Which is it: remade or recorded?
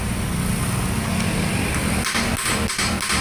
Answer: recorded